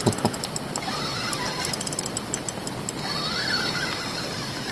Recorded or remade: recorded